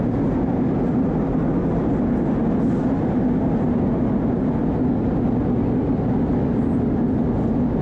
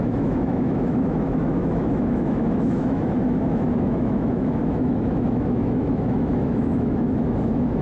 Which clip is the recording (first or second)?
first